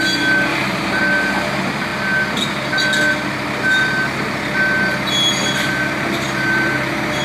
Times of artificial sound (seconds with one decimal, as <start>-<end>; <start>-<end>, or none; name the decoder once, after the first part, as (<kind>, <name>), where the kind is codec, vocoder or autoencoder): 0.5-1.0 (vocoder, BigVGAN v2)